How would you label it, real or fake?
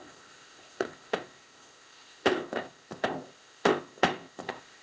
fake